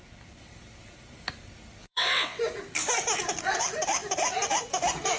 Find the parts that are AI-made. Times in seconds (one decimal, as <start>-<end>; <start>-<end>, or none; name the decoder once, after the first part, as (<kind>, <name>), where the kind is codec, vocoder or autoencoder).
1.8-2.4 (vocoder, WaveNeXt)

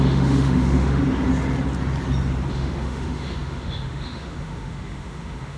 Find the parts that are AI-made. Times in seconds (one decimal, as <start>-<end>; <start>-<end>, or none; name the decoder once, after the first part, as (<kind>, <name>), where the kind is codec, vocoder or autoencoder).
0.0-1.0 (autoencoder, DAC-VAE); 2.5-5.6

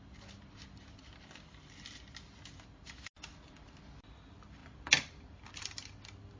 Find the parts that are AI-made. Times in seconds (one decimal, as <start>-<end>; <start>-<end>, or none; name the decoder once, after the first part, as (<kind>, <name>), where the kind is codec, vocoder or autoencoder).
none

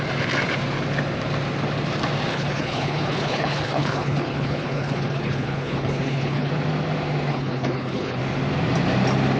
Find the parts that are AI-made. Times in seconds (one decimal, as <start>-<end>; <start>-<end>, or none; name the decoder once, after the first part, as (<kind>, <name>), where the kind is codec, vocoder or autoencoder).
2.3-6.5 (codec, HILCodec); 7.3-8.2

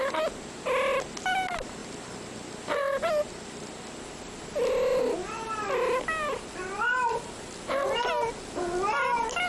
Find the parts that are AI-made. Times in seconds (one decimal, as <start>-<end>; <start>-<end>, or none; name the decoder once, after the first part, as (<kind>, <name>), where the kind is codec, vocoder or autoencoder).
none

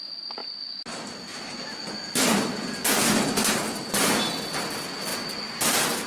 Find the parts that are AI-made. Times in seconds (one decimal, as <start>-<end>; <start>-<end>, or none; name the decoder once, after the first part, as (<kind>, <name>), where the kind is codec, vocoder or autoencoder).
none

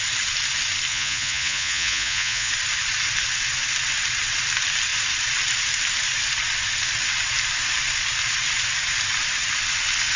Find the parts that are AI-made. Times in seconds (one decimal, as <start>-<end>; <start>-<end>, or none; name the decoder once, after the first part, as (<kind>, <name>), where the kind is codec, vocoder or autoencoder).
0.9-2.5 (vocoder, Vocos)

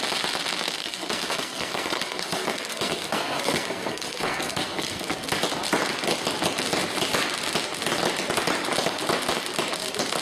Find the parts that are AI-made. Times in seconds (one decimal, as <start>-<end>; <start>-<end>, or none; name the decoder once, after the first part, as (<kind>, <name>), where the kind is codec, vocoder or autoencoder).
0.8-5.1 (codec, SNAC)